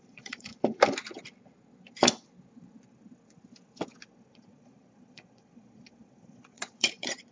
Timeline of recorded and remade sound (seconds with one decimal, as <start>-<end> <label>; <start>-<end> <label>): 0.0-0.5 remade; 0.5-4.3 recorded; 4.3-7.3 remade